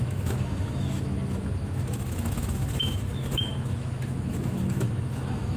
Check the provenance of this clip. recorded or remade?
remade